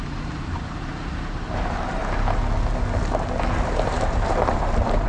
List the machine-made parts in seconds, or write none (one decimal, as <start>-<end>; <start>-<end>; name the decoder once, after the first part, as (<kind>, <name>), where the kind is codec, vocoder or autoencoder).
0.0-0.9 (vocoder, BigVGAN v2); 1.6-2.0; 3.8-5.1